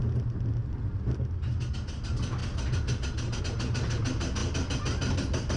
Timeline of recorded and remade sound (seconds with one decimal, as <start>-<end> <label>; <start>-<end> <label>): 0.0-5.6 recorded